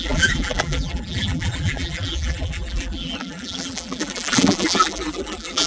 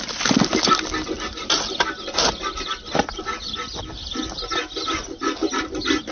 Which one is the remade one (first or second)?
first